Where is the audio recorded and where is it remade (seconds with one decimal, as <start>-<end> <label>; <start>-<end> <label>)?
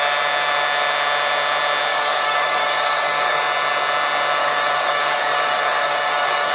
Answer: 0.0-1.9 recorded; 1.9-3.4 remade; 3.4-4.4 recorded; 4.4-6.5 remade